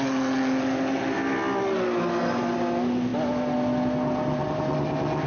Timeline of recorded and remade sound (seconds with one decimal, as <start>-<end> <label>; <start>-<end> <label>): 0.0-5.3 recorded